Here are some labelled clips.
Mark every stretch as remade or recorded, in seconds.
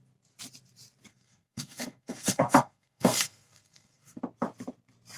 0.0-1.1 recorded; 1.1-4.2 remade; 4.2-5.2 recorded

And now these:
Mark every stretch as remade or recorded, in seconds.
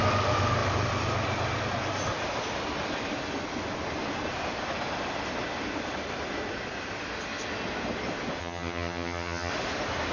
0.0-8.4 recorded; 8.4-9.5 remade; 9.5-10.1 recorded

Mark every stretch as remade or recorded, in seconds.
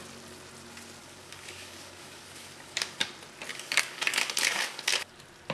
0.0-1.0 recorded; 1.0-3.1 remade; 3.1-3.5 recorded; 3.5-5.1 remade; 5.1-5.5 recorded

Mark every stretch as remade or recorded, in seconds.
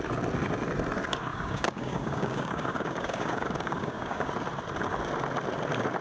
0.0-1.3 recorded; 1.3-4.3 remade; 4.3-6.0 recorded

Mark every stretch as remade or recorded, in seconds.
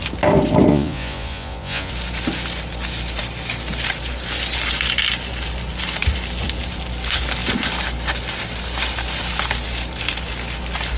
0.0-0.7 recorded; 0.7-1.9 remade; 1.9-11.0 recorded